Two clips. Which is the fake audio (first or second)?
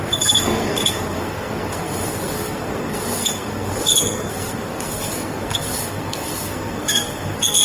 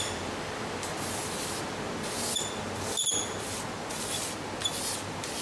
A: first